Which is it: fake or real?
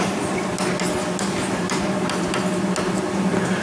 real